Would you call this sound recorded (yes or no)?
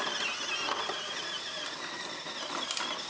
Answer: yes